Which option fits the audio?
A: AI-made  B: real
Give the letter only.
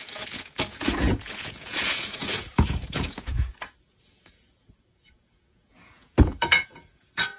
A